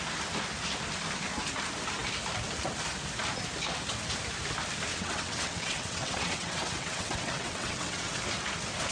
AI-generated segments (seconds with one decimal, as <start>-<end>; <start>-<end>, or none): 4.9-8.2